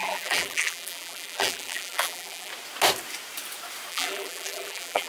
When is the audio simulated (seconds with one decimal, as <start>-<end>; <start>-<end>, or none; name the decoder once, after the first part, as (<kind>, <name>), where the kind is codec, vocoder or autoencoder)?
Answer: 0.0-2.5 (vocoder, BigVGAN v2); 3.9-5.1